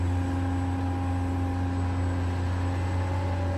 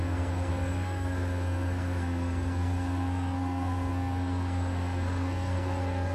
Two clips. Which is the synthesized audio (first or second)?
second